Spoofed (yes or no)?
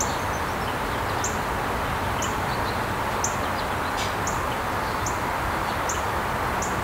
no